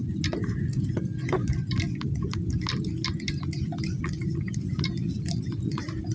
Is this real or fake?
real